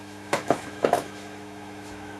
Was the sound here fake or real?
fake